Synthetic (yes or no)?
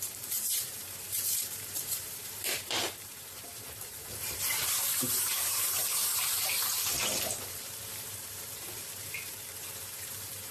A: yes